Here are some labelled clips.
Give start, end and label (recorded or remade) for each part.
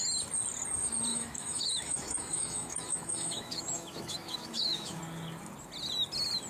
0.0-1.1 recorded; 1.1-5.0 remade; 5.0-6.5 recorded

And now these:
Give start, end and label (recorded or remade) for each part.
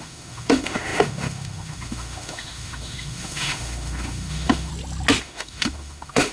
0.0-4.7 remade; 4.7-5.2 recorded; 5.2-6.3 remade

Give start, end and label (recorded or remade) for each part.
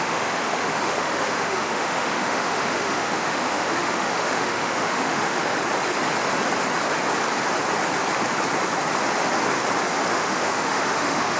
0.0-5.5 remade; 5.5-10.1 recorded; 10.1-11.4 remade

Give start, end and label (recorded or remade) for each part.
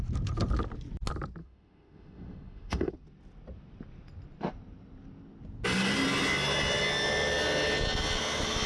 0.0-1.4 recorded; 1.4-2.9 remade; 2.9-8.7 recorded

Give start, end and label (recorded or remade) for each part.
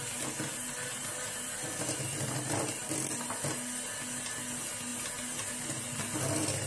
0.0-6.7 recorded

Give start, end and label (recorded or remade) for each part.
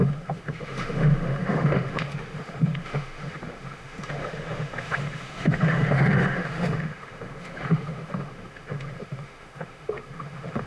0.0-10.7 remade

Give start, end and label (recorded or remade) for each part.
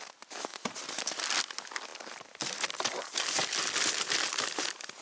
0.0-5.0 recorded